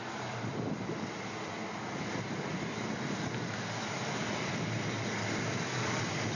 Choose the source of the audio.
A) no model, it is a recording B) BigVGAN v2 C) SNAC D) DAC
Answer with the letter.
B